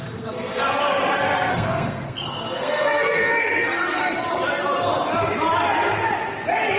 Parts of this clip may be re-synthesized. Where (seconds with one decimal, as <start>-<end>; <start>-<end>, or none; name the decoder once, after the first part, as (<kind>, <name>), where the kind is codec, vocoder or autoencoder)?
0.0-0.6 (codec, SNAC); 1.5-4.0